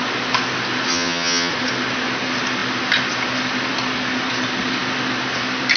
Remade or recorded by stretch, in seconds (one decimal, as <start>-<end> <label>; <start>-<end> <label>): 0.0-0.9 recorded; 0.9-1.5 remade; 1.5-5.8 recorded